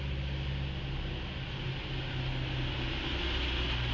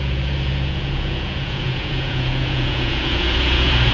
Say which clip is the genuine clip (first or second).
first